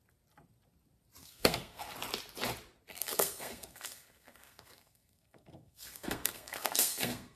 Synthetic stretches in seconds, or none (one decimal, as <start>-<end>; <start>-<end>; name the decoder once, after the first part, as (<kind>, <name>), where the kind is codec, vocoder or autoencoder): 1.2-1.9 (codec, SNAC); 2.9-7.4